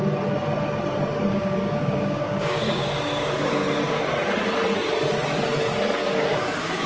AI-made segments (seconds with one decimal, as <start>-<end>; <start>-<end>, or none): 1.3-4.0; 6.0-6.9